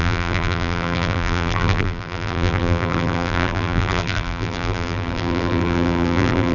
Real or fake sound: fake